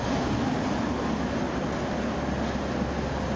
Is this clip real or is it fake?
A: real